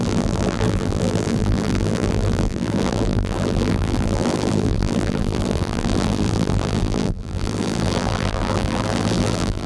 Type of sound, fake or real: fake